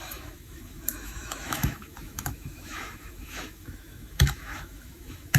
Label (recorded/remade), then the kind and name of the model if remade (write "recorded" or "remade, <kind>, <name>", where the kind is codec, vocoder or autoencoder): remade, autoencoder, DAC-VAE